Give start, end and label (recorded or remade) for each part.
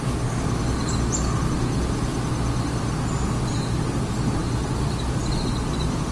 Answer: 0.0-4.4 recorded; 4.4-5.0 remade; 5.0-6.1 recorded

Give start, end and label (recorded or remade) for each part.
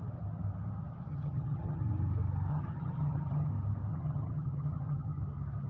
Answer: 0.0-1.1 recorded; 1.1-1.8 remade; 1.8-2.5 recorded; 2.5-3.5 remade; 3.5-3.9 recorded; 3.9-5.2 remade; 5.2-5.7 recorded